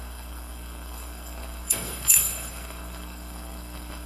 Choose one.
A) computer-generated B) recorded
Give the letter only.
A